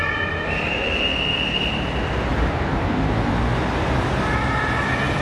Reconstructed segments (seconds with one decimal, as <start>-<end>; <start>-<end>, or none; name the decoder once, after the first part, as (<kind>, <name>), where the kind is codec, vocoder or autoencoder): 0.0-5.2 (vocoder, BigVGAN v2)